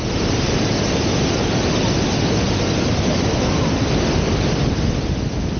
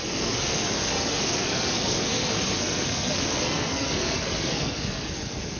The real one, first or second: first